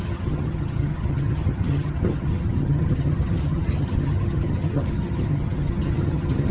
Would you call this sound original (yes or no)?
no